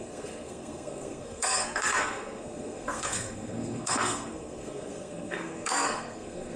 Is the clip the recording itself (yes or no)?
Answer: no